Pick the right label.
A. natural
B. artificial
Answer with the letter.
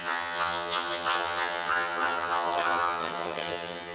B